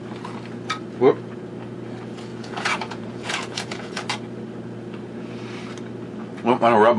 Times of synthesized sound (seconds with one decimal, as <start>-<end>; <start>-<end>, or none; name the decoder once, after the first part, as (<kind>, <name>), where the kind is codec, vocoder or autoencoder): 2.3-4.0 (vocoder, Vocos)

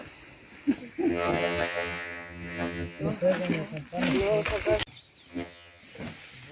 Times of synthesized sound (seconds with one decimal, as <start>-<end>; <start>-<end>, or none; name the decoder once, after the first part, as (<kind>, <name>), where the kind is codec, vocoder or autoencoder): 1.1-3.0 (vocoder, HiFi-GAN); 5.3-5.8

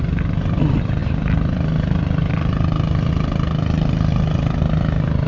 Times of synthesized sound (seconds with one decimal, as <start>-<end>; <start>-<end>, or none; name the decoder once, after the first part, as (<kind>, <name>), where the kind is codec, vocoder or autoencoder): none

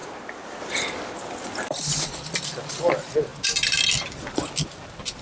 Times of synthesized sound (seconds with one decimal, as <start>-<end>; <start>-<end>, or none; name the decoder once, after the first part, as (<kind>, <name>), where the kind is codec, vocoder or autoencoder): none

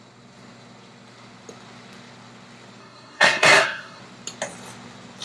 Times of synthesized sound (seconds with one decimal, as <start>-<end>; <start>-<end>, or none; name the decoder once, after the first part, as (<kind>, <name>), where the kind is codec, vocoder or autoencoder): 2.8-4.0 (codec, SNAC)

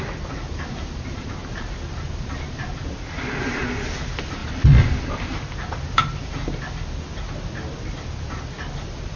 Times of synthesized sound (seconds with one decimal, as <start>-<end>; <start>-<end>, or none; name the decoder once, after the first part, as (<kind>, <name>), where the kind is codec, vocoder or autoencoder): none

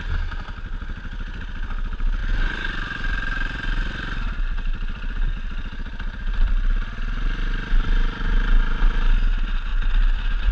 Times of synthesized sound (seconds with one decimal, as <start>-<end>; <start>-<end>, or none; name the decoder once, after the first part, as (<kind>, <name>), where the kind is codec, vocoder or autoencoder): 2.2-6.5 (vocoder, BigVGAN v2); 9.7-10.5